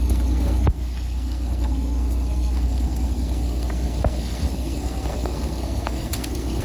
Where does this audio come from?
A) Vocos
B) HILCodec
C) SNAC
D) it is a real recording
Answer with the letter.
C